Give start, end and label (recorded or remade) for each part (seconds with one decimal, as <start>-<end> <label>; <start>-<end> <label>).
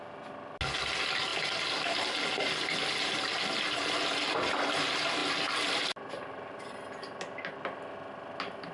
0.0-8.7 recorded